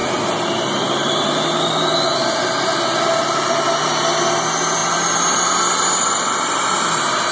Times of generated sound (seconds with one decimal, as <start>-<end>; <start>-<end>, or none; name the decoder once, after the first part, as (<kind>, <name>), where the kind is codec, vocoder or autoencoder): 0.0-3.5 (vocoder, BigVGAN v2)